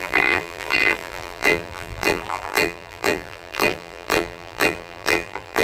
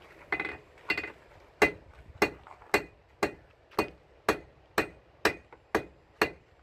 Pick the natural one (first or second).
second